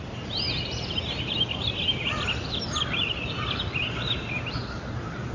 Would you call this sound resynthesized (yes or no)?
no